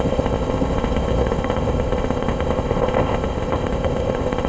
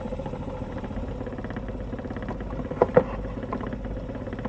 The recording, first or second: second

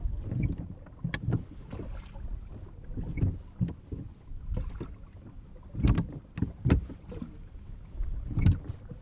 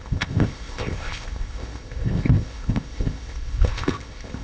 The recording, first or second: first